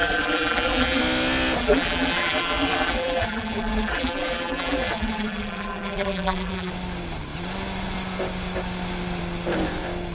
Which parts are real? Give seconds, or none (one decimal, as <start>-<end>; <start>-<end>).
1.0-1.6; 6.7-10.1